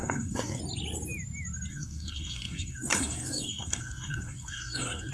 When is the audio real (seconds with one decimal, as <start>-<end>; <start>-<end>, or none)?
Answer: 0.6-1.7